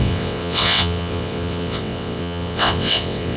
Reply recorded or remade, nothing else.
remade